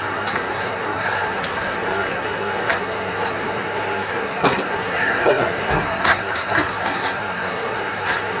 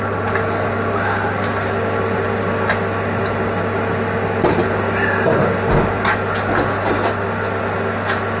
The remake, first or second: first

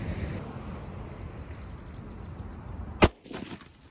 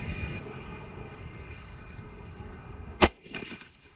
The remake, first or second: second